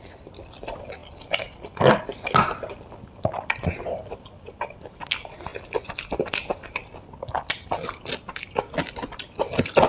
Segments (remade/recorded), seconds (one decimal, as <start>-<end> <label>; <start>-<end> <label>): 0.0-9.9 recorded